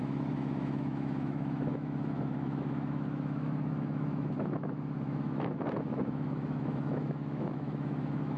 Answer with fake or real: fake